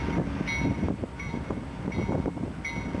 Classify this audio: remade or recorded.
recorded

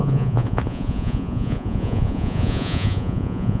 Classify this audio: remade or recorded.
remade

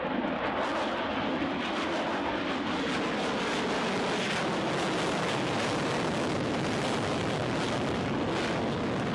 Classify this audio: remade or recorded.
recorded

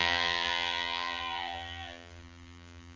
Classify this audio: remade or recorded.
remade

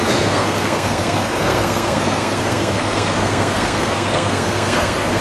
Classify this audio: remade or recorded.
remade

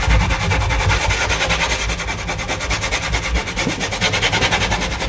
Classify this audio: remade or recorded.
recorded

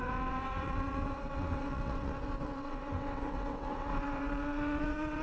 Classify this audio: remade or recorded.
remade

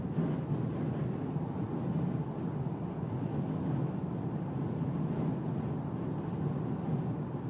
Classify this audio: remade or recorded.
recorded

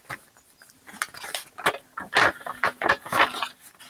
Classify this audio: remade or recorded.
recorded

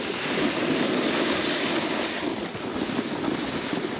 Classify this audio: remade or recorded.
recorded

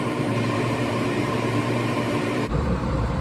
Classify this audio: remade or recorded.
remade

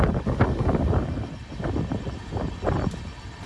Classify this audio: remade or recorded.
recorded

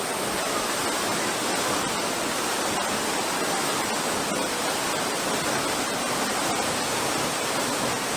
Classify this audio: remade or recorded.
recorded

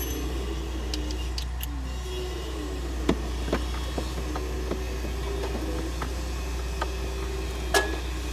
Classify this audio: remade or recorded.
recorded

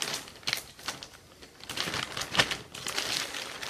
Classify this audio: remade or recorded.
recorded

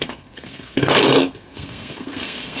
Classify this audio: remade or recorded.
remade